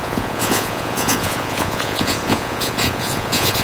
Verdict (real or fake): fake